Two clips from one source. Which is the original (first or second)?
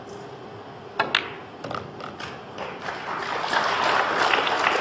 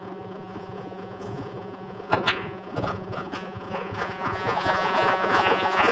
first